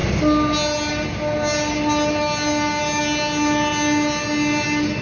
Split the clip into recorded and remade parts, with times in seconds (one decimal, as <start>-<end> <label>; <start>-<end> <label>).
0.0-5.0 recorded